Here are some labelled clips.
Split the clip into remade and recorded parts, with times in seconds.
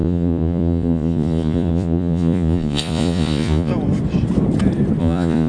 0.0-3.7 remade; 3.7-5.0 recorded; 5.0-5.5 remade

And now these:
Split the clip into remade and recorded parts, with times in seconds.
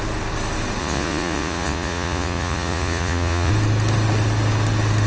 0.0-0.8 recorded; 0.8-3.5 remade; 3.5-5.1 recorded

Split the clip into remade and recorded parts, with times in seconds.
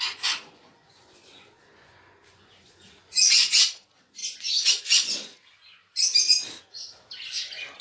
0.0-5.3 remade; 5.3-7.8 recorded